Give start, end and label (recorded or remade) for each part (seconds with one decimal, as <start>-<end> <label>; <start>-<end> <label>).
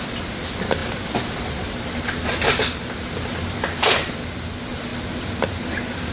0.0-0.8 recorded; 0.8-3.6 remade; 3.6-6.1 recorded